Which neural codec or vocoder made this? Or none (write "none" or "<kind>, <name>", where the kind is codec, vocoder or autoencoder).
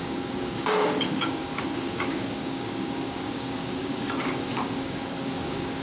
codec, DAC